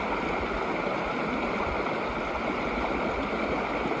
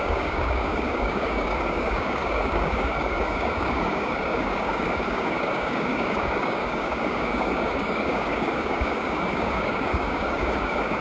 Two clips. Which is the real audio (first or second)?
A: first